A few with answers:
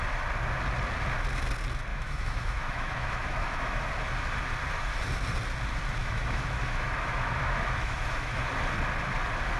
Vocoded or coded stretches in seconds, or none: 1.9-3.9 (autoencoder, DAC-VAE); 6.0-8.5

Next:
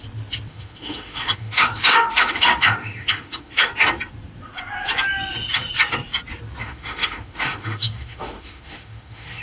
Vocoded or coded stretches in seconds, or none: 0.5-3.7 (autoencoder, DAC-VAE); 6.6-9.4

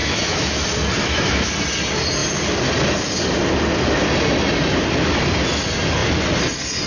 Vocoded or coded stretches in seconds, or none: 0.0-0.5 (autoencoder, DAC-VAE); 1.0-1.5

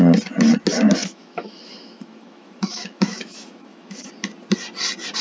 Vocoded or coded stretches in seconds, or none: 1.0-4.1 (autoencoder, DAC-VAE)

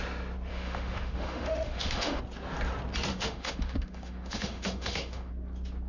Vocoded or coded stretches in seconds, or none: 0.5-2.2 (autoencoder, DAC-VAE); 3.1-5.3